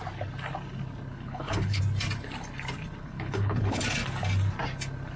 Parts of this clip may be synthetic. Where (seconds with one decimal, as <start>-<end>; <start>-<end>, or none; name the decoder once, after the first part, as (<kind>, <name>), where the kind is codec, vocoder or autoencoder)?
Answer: 1.1-1.8 (codec, HILCodec); 3.0-3.8